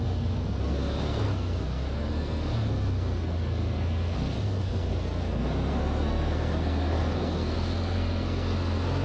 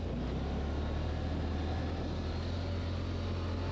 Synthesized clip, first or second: first